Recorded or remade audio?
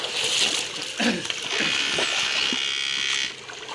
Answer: recorded